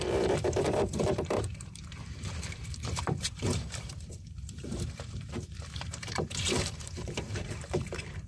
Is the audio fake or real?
fake